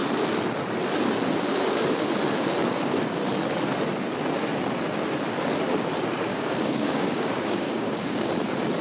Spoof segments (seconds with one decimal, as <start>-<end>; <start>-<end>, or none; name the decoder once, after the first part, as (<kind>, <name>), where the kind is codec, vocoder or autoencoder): 6.3-8.3 (codec, DAC)